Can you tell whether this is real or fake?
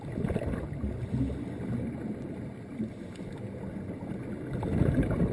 real